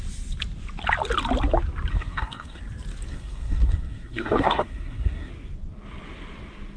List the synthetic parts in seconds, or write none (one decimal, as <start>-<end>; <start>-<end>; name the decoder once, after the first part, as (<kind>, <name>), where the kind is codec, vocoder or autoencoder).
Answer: 1.9-2.6 (codec, SNAC); 3.1-5.3